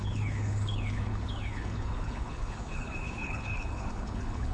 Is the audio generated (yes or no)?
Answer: yes